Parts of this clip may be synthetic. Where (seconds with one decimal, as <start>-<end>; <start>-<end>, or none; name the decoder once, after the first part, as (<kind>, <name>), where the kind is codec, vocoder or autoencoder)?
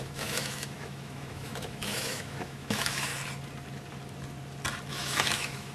0.0-3.1 (autoencoder, DAC-VAE); 4.9-5.7